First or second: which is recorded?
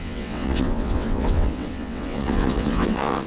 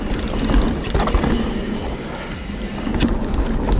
second